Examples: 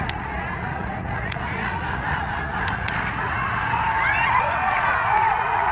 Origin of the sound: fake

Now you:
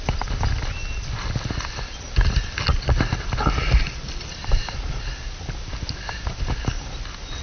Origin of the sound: real